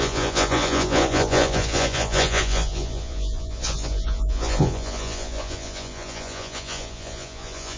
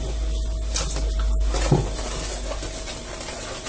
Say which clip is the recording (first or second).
second